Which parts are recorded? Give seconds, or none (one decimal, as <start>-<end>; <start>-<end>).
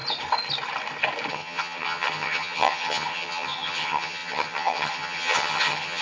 0.0-1.3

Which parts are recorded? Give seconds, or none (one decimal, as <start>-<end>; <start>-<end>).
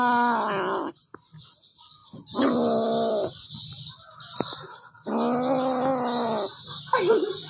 0.0-7.5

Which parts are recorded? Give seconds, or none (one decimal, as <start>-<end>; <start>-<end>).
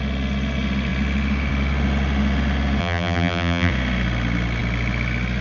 0.0-2.8; 3.7-5.4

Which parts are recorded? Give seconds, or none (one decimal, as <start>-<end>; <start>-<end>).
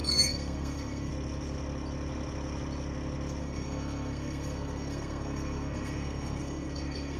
1.1-3.4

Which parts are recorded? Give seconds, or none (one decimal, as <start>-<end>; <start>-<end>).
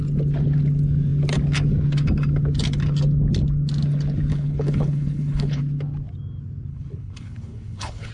0.0-4.3; 5.6-6.7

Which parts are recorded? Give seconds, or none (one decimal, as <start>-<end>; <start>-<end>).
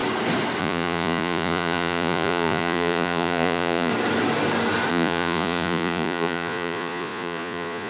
0.0-0.6; 3.9-4.9